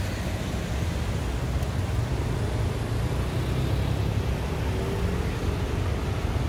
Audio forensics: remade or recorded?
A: recorded